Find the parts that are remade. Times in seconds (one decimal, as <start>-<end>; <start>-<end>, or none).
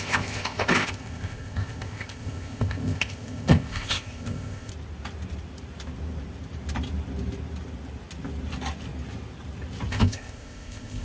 0.0-4.7; 9.9-11.0